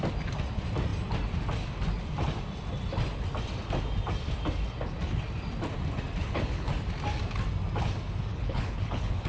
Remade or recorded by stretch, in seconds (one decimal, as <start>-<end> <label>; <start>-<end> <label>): 0.0-6.2 recorded; 6.2-6.7 remade; 6.7-8.3 recorded; 8.3-9.3 remade